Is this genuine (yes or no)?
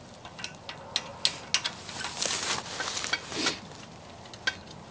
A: yes